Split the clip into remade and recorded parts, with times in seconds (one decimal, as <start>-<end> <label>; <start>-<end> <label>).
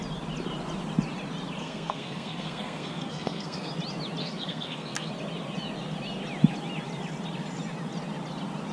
0.0-1.6 recorded; 1.6-3.7 remade; 3.7-4.2 recorded; 4.2-5.1 remade; 5.1-8.7 recorded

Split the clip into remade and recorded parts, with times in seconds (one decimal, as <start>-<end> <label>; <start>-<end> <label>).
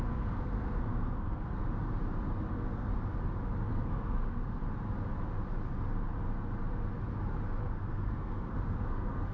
0.0-1.6 remade; 1.6-2.5 recorded; 2.5-2.9 remade; 2.9-3.7 recorded; 3.7-4.6 remade; 4.6-7.6 recorded; 7.6-9.3 remade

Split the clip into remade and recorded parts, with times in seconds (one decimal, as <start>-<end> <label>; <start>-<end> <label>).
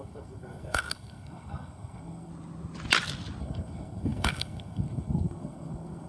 0.0-2.3 remade; 2.3-3.4 recorded; 3.4-6.1 remade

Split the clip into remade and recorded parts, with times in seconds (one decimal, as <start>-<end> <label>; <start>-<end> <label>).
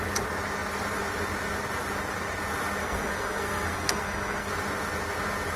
0.0-2.8 recorded; 2.8-4.5 remade; 4.5-5.6 recorded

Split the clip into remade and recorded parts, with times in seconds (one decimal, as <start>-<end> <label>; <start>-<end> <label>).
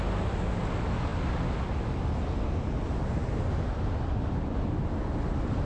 0.0-5.7 recorded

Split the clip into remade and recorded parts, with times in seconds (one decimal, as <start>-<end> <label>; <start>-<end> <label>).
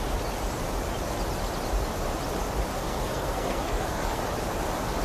0.0-2.7 recorded; 2.7-4.2 remade; 4.2-5.0 recorded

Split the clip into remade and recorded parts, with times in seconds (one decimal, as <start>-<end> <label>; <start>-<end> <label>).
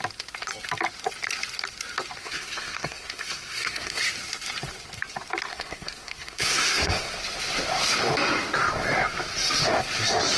0.0-2.2 recorded; 2.2-4.0 remade; 4.0-5.5 recorded; 5.5-7.1 remade; 7.1-10.4 recorded